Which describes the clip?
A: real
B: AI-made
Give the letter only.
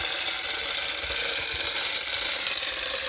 A